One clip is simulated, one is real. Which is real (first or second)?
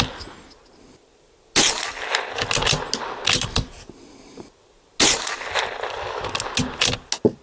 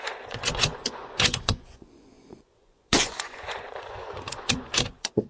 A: first